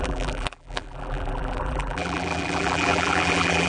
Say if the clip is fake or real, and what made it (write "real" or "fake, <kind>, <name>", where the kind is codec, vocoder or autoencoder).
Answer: fake, vocoder, BigVGAN v2